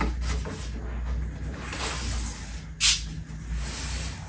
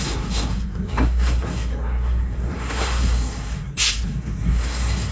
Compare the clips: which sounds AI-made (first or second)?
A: second